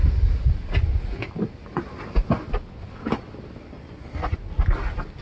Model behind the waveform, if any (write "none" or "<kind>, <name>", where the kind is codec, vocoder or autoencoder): none